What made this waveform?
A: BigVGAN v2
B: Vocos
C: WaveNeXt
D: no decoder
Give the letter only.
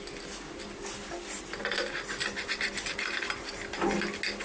D